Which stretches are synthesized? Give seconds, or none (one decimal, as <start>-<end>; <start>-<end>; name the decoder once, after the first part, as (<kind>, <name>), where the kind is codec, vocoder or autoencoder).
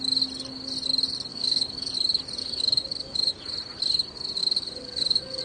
1.3-1.9 (codec, DAC); 2.4-3.3; 4.4-5.4